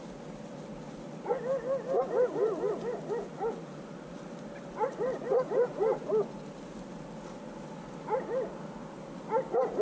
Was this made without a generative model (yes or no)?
yes